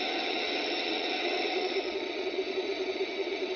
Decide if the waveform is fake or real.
fake